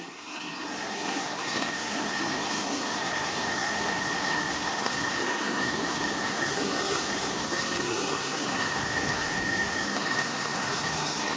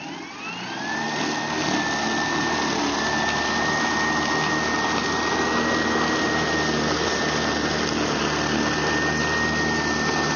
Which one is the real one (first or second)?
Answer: second